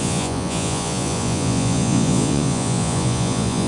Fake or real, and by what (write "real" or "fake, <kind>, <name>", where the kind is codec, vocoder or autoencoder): fake, vocoder, Vocos